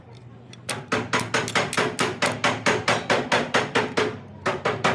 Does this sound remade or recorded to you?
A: recorded